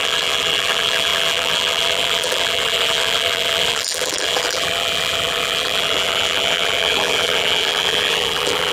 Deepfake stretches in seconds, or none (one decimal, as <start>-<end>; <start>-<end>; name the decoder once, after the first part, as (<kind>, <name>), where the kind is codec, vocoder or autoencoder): 0.0-8.7 (vocoder, BigVGAN v2)